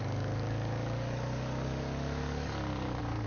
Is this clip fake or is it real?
fake